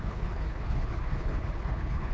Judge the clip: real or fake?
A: fake